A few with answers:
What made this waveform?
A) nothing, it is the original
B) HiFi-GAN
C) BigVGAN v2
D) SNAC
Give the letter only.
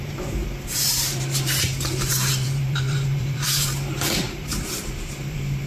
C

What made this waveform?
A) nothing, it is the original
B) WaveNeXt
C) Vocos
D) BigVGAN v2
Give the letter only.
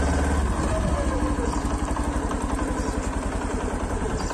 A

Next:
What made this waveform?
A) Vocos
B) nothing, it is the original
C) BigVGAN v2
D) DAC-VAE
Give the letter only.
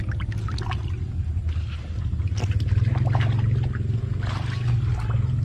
B